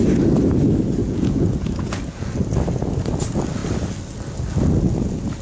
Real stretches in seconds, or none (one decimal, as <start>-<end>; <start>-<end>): 0.0-1.0; 2.3-5.4